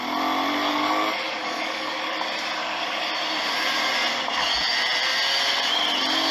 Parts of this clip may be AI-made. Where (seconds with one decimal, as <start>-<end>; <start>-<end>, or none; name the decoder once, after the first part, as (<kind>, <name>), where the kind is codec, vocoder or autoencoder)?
0.6-2.2 (codec, DAC); 2.6-3.1